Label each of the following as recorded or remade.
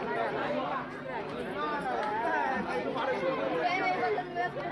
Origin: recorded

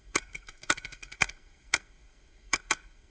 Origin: remade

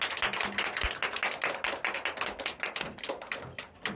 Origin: recorded